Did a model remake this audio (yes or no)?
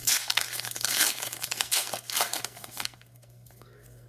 yes